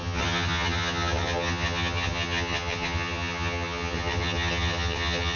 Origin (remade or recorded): remade